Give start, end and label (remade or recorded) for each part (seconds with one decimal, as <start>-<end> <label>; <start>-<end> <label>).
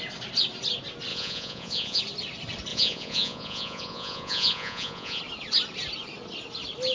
0.0-1.1 recorded; 1.1-2.0 remade; 2.0-2.7 recorded; 2.7-5.2 remade; 5.2-6.9 recorded